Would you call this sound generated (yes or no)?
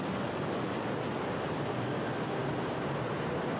no